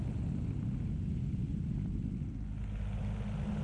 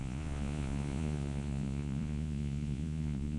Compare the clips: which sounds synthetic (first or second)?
second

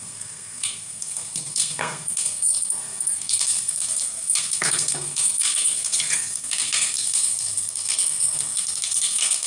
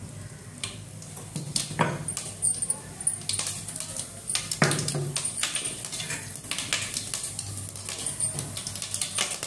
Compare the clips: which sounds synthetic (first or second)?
first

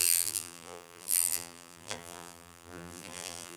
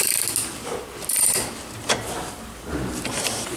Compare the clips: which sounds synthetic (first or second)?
first